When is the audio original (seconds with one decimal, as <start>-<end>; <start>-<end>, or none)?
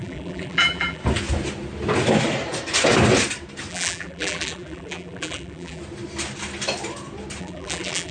1.0-3.7; 5.8-7.4